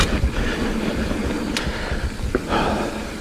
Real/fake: fake